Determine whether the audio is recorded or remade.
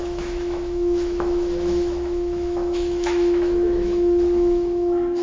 remade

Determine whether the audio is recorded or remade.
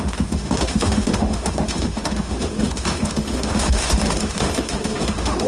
remade